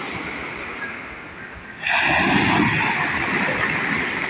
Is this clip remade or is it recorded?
recorded